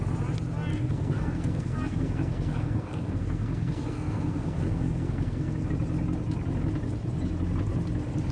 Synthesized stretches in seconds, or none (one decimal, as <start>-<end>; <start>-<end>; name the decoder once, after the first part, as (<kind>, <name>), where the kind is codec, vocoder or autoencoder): 0.7-5.7 (codec, SNAC)